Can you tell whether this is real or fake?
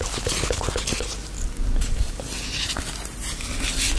real